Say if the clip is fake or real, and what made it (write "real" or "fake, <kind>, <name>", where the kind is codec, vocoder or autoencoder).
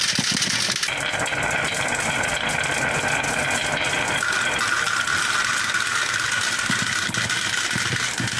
real